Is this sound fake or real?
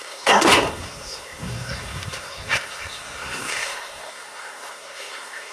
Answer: fake